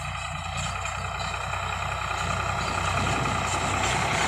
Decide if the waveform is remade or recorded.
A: recorded